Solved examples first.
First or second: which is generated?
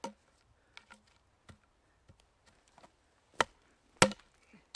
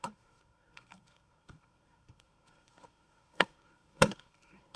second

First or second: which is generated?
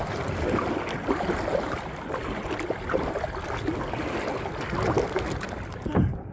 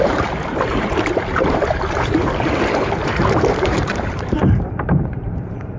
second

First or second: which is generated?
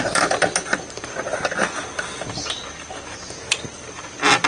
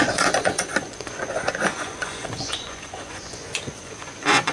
second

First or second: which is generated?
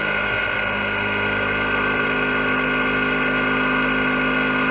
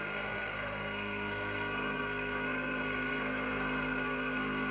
second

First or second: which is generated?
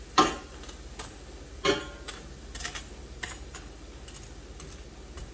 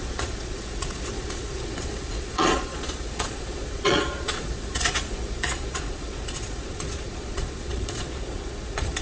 second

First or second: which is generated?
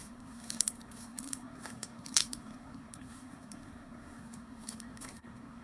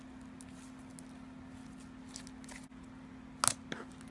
first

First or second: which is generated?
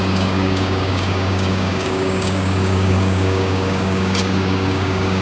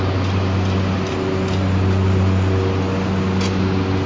first